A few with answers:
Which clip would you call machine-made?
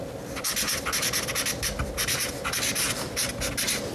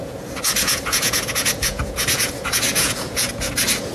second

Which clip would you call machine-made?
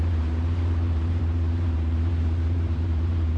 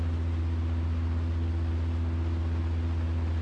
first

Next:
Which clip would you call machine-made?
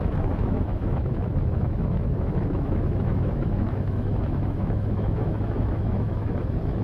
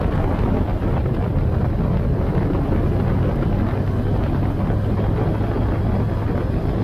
first